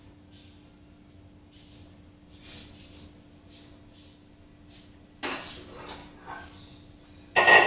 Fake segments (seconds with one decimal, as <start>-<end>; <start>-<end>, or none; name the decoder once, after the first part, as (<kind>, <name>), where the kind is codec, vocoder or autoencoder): none